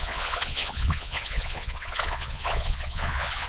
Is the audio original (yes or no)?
no